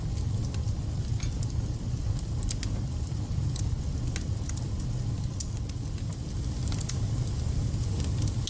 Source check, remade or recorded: recorded